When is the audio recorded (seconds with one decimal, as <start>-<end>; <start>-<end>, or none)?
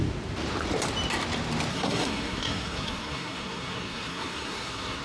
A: 0.0-1.7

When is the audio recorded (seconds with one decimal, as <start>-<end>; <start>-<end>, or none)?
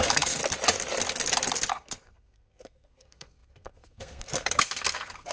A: 0.4-1.7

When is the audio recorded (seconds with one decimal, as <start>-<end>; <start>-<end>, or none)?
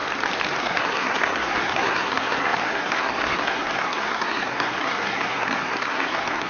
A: 0.0-0.6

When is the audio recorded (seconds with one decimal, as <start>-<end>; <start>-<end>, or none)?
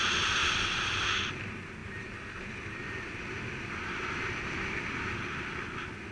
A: 0.0-6.1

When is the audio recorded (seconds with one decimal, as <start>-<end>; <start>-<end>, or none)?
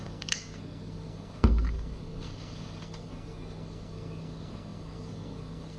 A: none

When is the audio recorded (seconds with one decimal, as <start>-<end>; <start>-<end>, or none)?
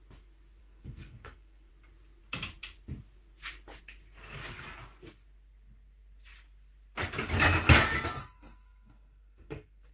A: 0.0-0.6; 1.7-8.2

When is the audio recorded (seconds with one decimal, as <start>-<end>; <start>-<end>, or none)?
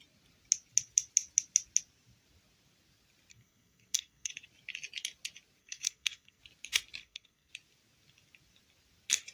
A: 0.0-3.3; 4.3-5.6; 6.4-7.0; 7.5-9.3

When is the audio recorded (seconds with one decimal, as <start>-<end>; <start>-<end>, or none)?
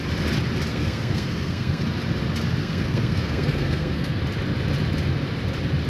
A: 0.0-0.7; 1.8-2.6; 4.2-5.9